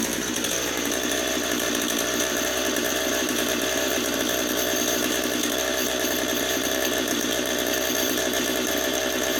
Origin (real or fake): fake